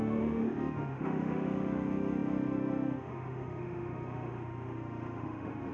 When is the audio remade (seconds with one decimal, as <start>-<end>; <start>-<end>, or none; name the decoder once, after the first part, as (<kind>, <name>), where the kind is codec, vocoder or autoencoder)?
0.0-5.7 (autoencoder, DAC-VAE)